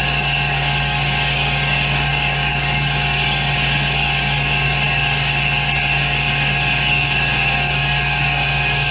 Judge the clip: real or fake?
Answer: fake